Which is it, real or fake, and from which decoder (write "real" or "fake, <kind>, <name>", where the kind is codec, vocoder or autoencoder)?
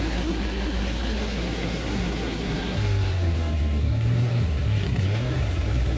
fake, codec, SNAC